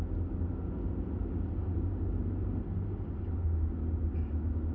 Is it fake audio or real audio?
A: real